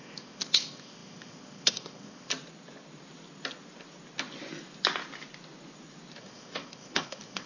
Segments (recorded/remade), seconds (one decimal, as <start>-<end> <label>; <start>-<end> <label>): 0.0-2.3 remade; 2.3-6.2 recorded; 6.2-7.5 remade